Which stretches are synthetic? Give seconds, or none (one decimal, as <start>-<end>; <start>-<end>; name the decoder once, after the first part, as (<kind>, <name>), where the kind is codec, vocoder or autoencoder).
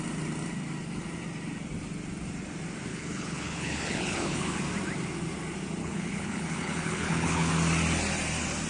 2.9-4.6 (codec, HILCodec); 5.8-7.5